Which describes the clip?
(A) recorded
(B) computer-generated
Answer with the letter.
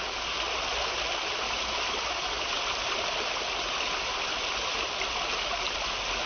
A